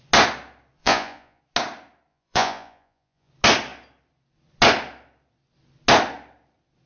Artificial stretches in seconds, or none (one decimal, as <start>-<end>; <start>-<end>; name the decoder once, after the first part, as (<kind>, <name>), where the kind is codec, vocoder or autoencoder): 0.8-1.4 (vocoder, Vocos); 2.1-3.3